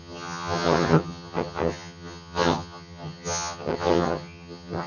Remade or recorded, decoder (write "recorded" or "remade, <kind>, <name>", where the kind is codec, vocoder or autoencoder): remade, vocoder, HiFi-GAN